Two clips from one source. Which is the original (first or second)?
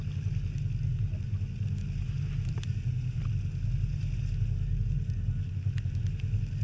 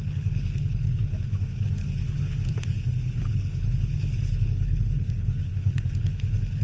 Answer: first